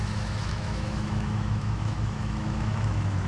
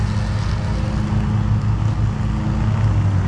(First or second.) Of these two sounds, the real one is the second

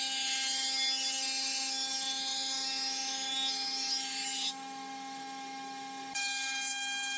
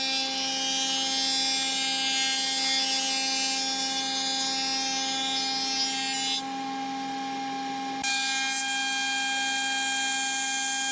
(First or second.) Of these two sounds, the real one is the second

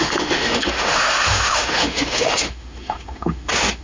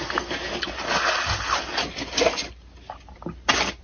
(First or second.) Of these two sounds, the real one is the second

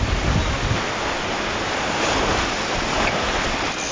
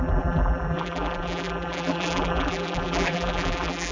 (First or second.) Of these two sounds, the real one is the first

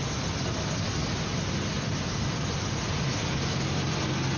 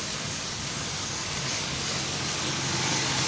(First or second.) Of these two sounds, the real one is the first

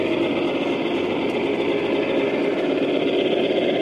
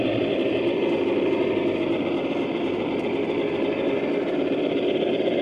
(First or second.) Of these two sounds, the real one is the first